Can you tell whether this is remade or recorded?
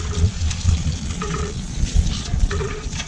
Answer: remade